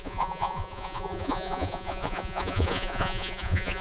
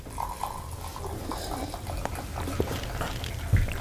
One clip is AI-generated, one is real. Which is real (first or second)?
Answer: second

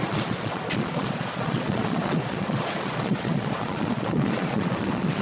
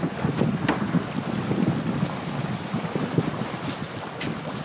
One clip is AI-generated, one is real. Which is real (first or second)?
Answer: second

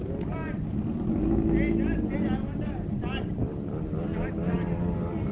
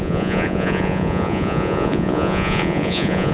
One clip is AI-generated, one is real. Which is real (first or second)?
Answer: first